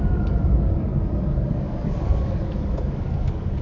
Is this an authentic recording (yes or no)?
no